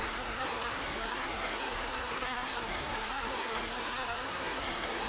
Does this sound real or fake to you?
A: fake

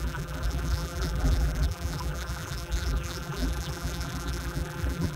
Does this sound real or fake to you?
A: fake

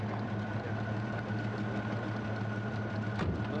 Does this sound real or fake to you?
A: real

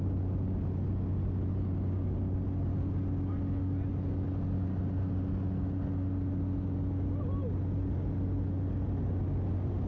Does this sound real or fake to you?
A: real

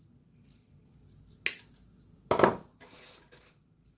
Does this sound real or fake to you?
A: real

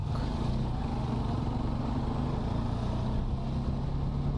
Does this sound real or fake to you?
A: real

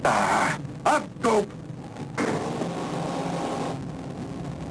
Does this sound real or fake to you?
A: real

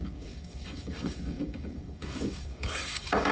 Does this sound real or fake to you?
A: fake